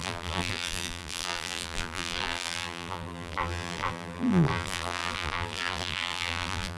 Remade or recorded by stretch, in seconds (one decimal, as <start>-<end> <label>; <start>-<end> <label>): 0.0-6.8 remade